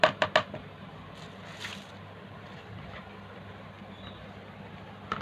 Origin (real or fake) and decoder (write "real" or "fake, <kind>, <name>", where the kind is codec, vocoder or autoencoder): real